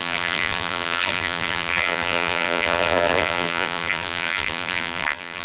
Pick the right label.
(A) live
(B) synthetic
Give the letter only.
B